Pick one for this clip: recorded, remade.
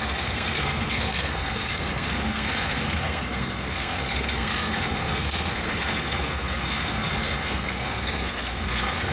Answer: remade